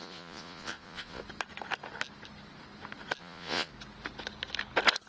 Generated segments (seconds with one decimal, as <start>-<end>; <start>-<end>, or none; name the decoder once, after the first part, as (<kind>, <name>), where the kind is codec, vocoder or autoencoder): 0.0-1.2 (vocoder, Vocos); 3.2-3.7